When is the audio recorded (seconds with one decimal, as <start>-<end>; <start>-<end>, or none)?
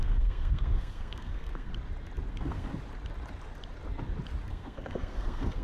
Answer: 1.7-2.3; 2.7-4.5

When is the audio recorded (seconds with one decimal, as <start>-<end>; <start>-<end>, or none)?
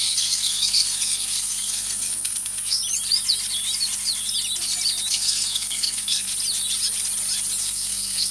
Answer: 2.8-5.1; 6.3-7.6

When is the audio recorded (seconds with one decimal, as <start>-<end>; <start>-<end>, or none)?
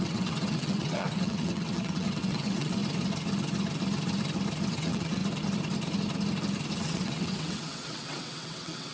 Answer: 2.8-4.7; 5.2-6.8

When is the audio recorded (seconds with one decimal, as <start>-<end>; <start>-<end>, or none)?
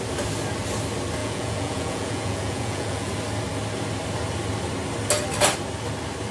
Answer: 0.0-1.2; 3.1-6.3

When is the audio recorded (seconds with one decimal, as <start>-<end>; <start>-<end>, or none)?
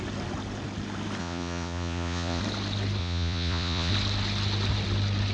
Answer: 0.0-1.2; 2.4-3.0; 3.9-5.3